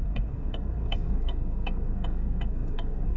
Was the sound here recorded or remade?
remade